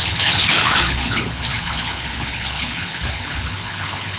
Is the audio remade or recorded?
remade